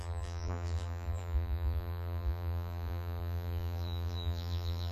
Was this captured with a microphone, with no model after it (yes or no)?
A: no